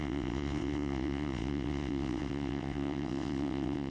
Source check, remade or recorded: remade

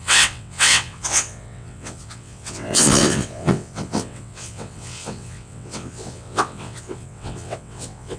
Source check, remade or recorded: remade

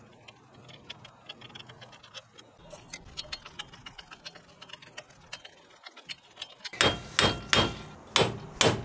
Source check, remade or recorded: recorded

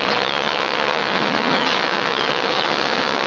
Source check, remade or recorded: remade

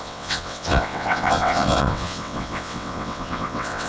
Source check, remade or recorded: remade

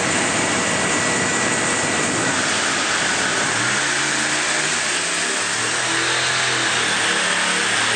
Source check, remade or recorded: recorded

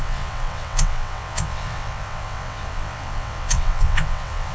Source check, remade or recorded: remade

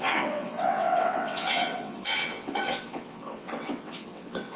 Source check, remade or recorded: remade